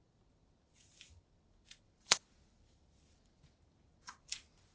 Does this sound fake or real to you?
fake